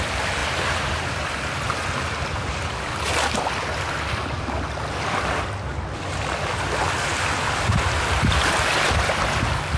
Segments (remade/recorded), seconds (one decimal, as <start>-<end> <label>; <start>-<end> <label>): 0.0-0.4 recorded; 0.4-1.0 remade; 1.0-9.8 recorded